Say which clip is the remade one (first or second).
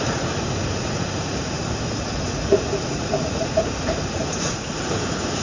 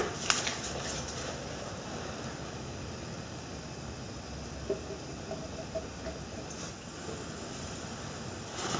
first